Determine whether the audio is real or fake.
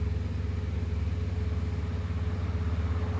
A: real